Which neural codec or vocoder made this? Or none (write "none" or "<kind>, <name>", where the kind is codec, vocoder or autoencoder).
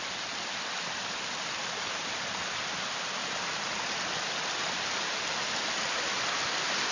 none